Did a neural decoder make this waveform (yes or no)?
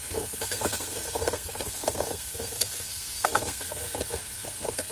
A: yes